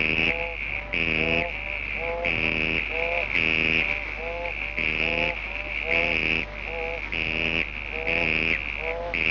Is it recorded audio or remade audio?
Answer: recorded